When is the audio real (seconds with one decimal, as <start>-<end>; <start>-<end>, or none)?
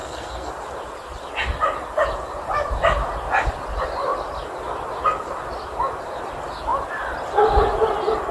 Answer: 0.5-8.3